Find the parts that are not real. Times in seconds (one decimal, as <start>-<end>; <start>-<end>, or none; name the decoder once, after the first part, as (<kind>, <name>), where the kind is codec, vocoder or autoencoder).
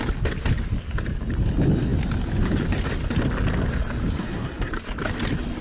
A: 4.2-4.7 (codec, SNAC)